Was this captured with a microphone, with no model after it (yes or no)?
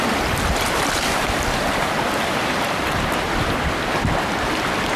yes